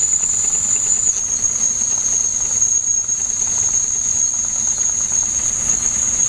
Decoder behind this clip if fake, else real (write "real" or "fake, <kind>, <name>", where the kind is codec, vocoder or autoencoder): real